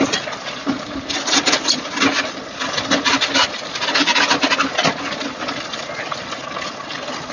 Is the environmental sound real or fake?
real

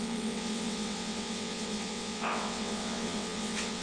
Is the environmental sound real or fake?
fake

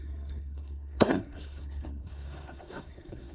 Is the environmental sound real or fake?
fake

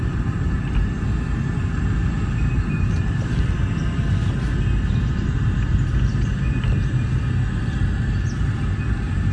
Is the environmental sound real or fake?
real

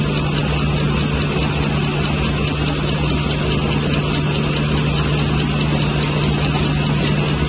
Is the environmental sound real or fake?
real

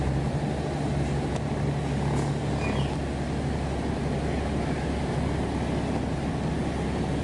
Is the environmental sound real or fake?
real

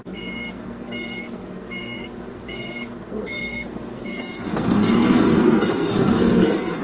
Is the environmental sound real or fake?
fake